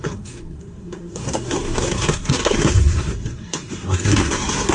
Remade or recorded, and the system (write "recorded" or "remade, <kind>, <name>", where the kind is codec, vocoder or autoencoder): remade, codec, SNAC